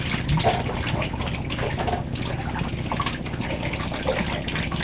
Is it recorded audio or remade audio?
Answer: recorded